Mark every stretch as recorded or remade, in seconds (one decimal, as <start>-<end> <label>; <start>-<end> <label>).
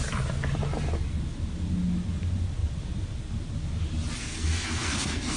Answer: 0.0-4.2 recorded; 4.2-5.4 remade